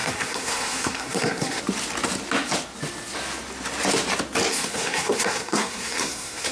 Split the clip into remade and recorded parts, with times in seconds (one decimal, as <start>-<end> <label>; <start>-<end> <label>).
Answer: 0.0-1.6 remade; 1.6-4.5 recorded; 4.5-6.5 remade